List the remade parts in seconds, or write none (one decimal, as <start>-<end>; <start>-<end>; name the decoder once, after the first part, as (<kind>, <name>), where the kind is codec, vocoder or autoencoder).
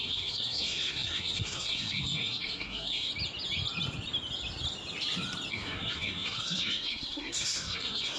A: 0.0-3.1 (codec, SNAC); 5.5-8.2